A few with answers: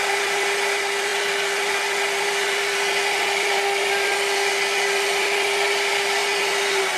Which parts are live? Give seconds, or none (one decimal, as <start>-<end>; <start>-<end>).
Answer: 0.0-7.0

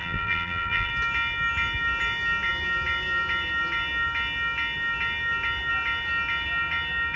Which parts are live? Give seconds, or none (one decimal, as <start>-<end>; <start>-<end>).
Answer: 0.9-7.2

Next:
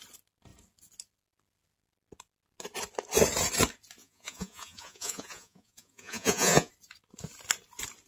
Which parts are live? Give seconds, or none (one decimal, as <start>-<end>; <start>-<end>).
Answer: 0.0-4.0; 6.7-8.1

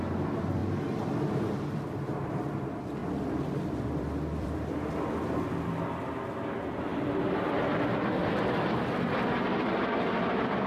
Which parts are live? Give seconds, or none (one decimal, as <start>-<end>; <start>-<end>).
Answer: 0.0-0.6; 2.0-3.0; 5.1-6.9; 7.6-8.2; 9.3-10.7

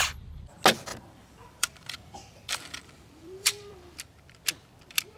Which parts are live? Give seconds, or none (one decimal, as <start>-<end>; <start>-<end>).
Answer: 0.0-0.9; 4.0-5.2

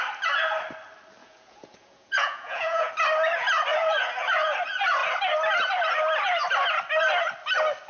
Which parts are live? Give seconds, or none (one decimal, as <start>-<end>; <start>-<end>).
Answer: 0.0-1.2; 2.9-7.9